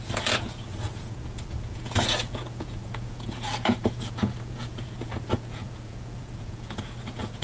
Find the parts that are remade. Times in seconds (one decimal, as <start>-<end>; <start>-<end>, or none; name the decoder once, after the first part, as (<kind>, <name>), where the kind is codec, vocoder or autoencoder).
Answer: 0.0-7.4 (vocoder, Vocos)